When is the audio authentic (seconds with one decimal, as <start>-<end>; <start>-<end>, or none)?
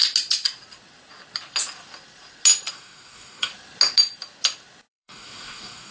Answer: 0.0-2.7; 3.5-4.9